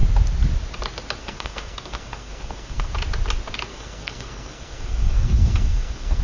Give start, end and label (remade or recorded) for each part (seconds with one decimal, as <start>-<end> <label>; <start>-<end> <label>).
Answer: 0.0-1.2 recorded; 1.2-2.9 remade; 2.9-3.7 recorded; 3.7-6.2 remade

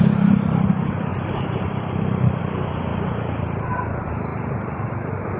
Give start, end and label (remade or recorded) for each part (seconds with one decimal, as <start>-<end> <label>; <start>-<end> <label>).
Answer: 0.0-1.1 recorded; 1.1-2.4 remade; 2.4-2.9 recorded; 2.9-3.6 remade; 3.6-4.3 recorded; 4.3-4.9 remade; 4.9-5.4 recorded

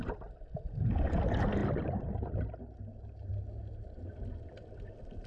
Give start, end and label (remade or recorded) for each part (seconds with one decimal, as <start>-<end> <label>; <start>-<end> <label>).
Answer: 0.0-5.3 recorded

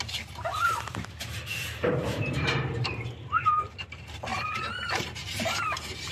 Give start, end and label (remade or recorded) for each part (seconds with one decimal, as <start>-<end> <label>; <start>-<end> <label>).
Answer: 0.0-6.1 remade

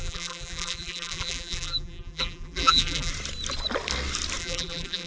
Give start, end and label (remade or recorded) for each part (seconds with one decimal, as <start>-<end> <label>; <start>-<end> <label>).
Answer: 0.0-3.1 remade; 3.1-4.4 recorded; 4.4-5.1 remade